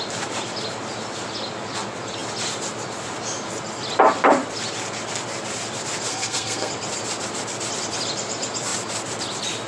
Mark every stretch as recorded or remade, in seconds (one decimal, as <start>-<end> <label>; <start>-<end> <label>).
0.0-6.1 recorded; 6.1-6.7 remade; 6.7-9.7 recorded